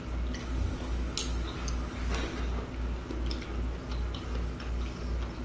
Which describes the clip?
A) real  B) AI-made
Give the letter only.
A